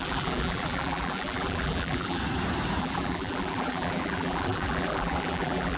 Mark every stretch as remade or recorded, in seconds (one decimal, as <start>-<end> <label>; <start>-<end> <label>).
0.0-2.2 remade; 2.2-2.8 recorded; 2.8-5.8 remade